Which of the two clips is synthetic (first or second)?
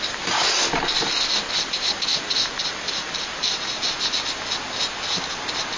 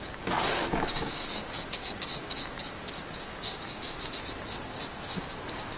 second